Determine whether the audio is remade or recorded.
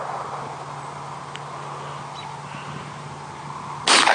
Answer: recorded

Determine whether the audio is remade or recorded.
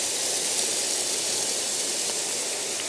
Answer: recorded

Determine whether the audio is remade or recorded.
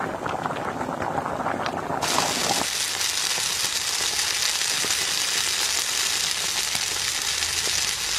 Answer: recorded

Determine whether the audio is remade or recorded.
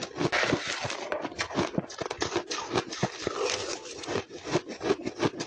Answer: recorded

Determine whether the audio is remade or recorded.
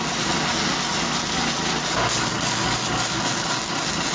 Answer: recorded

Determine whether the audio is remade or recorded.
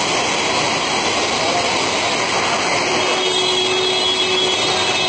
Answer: recorded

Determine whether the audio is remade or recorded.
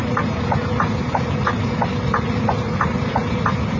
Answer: recorded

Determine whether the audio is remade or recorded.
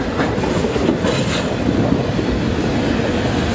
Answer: recorded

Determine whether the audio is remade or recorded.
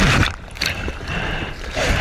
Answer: remade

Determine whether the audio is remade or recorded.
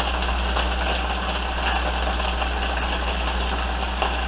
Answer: recorded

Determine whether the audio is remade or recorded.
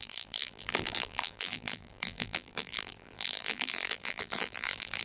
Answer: remade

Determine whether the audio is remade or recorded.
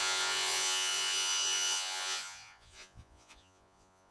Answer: remade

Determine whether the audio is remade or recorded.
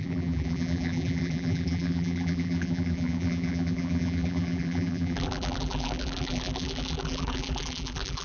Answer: remade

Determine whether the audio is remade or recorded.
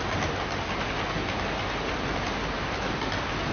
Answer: recorded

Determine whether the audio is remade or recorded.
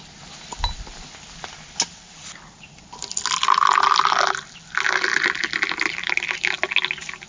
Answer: recorded